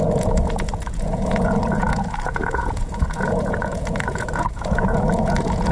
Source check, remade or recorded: remade